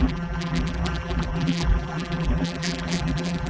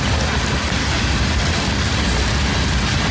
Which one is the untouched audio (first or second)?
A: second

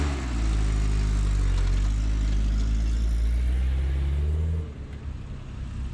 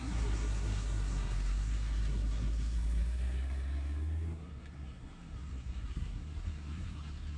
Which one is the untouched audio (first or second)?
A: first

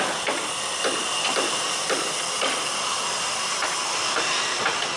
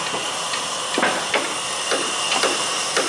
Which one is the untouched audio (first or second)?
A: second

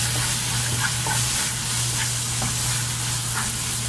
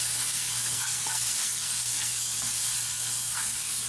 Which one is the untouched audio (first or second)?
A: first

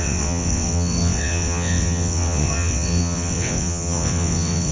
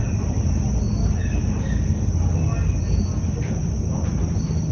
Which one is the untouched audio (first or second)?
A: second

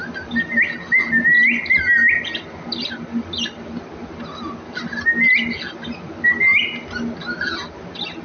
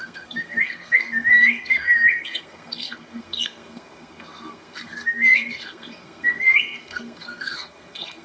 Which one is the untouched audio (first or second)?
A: first